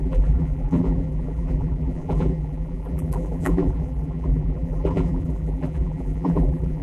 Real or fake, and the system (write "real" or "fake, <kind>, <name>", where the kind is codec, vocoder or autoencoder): fake, vocoder, BigVGAN v2